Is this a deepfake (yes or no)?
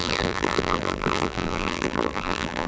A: yes